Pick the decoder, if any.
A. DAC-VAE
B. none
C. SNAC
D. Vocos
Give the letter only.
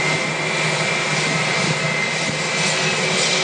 B